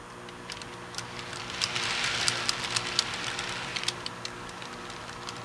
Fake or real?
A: real